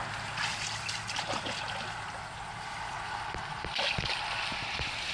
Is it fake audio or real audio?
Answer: real